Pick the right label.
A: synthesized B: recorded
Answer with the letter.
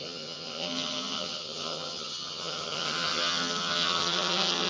A